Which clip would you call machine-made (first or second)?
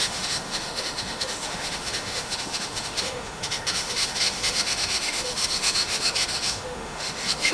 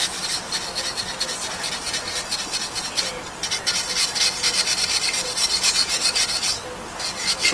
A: first